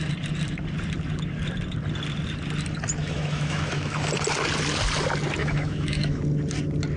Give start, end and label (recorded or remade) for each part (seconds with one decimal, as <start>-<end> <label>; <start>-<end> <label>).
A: 0.0-3.0 recorded; 3.0-4.1 remade; 4.1-5.4 recorded; 5.4-6.2 remade; 6.2-7.0 recorded